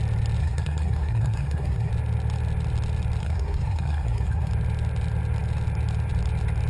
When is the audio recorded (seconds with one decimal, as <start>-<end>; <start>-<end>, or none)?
0.0-0.4; 1.9-3.2; 4.5-6.7